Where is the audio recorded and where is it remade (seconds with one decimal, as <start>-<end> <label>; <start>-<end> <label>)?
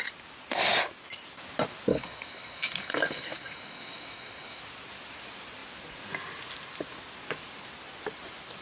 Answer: 0.0-1.9 recorded; 1.9-4.6 remade; 4.6-8.6 recorded